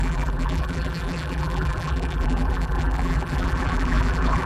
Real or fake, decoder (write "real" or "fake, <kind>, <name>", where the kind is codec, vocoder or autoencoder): fake, vocoder, BigVGAN v2